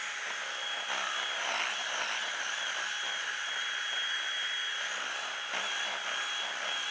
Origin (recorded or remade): recorded